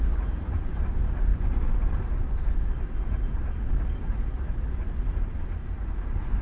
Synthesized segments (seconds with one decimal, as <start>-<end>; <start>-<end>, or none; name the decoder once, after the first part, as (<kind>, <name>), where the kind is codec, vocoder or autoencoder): 1.3-1.8 (vocoder, Vocos)

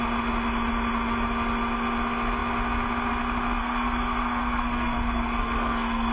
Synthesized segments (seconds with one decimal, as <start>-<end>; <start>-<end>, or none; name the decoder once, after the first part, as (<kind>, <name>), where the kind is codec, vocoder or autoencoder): 3.6-6.1 (codec, SNAC)

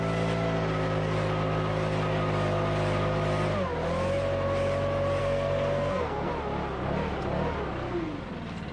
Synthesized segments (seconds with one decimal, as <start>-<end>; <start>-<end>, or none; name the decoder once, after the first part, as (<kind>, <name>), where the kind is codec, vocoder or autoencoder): 5.2-6.3 (codec, SNAC)